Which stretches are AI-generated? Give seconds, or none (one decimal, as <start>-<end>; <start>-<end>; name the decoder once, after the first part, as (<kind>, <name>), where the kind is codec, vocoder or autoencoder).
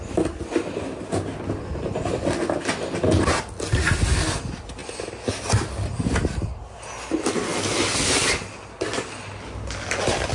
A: none